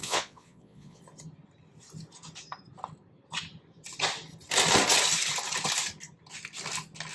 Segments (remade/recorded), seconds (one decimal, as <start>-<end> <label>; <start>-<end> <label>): 0.0-1.0 remade; 1.0-7.1 recorded